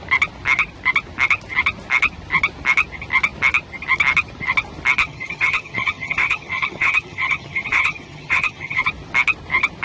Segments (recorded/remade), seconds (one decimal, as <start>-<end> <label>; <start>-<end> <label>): 0.0-5.0 recorded; 5.0-8.8 remade; 8.8-9.8 recorded